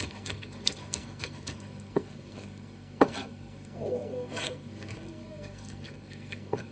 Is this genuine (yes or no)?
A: no